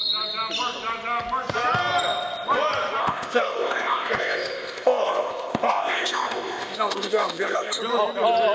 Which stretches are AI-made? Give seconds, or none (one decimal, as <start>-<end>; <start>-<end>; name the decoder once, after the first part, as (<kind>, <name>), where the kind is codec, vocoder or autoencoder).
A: 3.0-7.8 (codec, ZipCodec)